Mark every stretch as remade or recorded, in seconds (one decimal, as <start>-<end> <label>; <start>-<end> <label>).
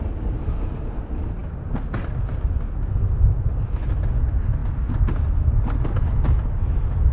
0.0-7.1 recorded